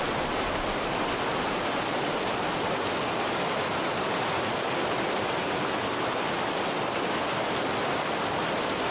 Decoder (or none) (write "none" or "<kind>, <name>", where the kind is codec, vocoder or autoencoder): none